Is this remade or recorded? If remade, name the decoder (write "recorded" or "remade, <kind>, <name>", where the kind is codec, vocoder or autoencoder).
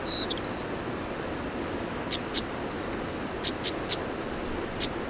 recorded